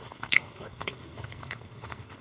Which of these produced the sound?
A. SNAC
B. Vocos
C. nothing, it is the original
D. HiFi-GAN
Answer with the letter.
A